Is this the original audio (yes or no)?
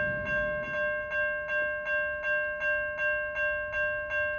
yes